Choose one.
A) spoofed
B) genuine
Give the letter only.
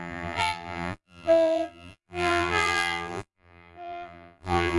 A